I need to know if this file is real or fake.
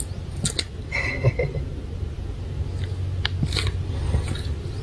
real